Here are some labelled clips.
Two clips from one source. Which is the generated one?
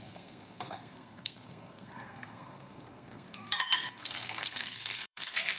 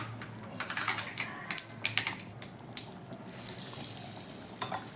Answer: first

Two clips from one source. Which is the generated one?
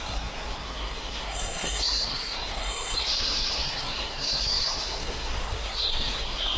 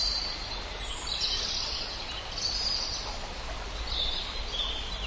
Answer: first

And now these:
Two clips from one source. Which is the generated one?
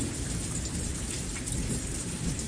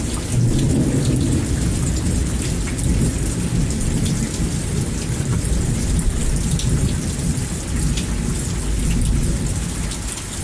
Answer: first